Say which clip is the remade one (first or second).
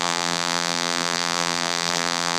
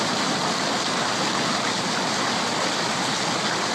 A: first